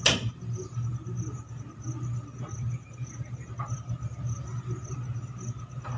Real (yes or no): yes